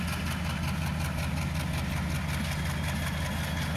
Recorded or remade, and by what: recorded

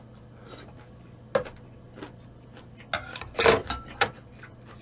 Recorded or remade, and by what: recorded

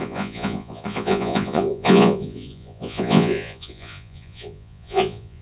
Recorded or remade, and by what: remade, vocoder, Vocos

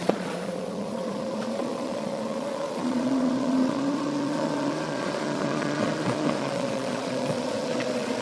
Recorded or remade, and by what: remade, vocoder, Vocos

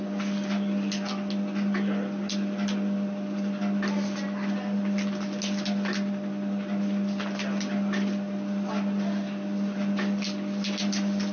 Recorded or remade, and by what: recorded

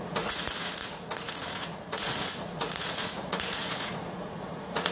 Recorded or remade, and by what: remade, vocoder, Vocos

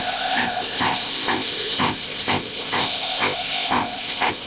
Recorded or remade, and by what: remade, codec, ZipCodec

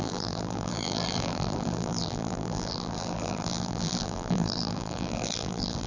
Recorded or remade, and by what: remade, vocoder, BigVGAN v2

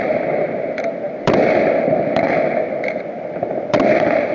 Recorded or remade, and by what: remade, vocoder, BigVGAN v2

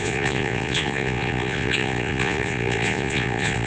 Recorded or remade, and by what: remade, vocoder, Vocos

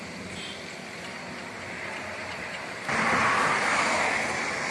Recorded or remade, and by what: remade, vocoder, BigVGAN v2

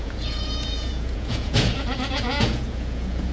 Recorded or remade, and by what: remade, vocoder, Vocos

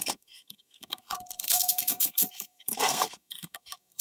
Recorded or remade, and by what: remade, codec, SNAC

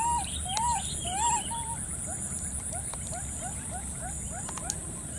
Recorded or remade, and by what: recorded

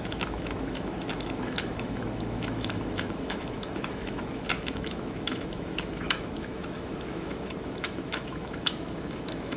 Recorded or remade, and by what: remade, autoencoder, DAC-VAE